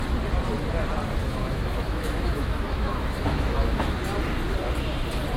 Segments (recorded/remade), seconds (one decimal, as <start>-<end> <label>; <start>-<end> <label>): 0.0-1.2 recorded; 1.2-3.8 remade; 3.8-5.4 recorded